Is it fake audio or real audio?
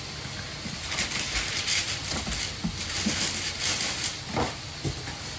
real